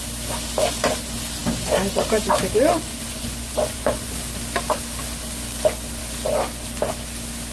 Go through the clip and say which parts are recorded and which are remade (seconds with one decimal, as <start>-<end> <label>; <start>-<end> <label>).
0.0-2.9 recorded; 2.9-4.1 remade; 4.1-7.5 recorded